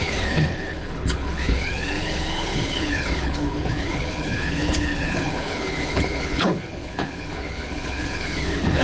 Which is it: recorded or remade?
remade